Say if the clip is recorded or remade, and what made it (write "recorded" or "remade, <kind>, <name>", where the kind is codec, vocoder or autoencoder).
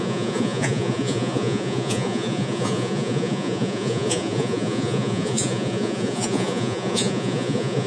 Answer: remade, vocoder, Vocos